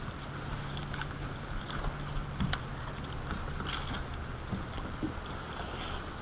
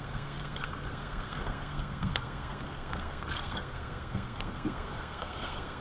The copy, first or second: second